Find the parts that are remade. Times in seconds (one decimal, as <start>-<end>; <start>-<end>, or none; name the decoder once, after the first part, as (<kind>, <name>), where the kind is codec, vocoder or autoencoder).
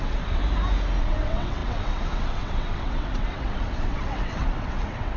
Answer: 0.0-0.4 (vocoder, WaveNeXt); 1.0-5.2